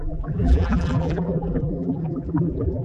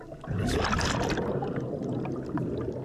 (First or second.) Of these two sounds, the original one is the second